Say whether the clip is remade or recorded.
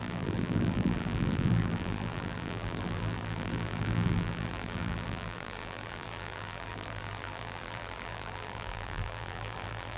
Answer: remade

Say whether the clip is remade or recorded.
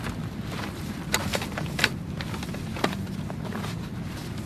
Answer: recorded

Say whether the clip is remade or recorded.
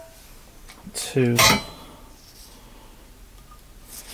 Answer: recorded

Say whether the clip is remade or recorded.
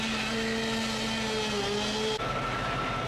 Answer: recorded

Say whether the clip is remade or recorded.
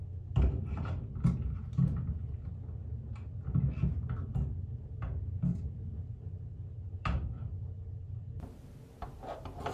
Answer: recorded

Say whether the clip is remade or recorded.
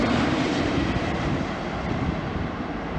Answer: remade